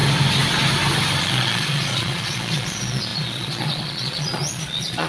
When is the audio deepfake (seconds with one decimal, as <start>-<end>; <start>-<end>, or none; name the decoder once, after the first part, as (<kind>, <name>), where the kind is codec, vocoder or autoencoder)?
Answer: 1.2-5.1 (vocoder, Vocos)